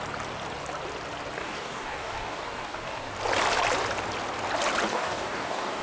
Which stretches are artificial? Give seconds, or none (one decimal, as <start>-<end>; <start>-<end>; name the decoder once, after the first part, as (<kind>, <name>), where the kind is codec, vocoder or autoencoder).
1.4-3.1 (codec, DAC); 4.9-5.8